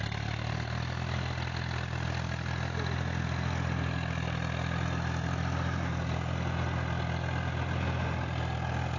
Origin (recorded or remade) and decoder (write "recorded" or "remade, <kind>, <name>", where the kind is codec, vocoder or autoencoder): recorded